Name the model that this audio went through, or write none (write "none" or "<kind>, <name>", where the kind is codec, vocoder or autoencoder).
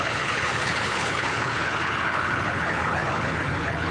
codec, HILCodec